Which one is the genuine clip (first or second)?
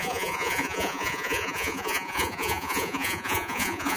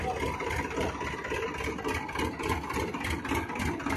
second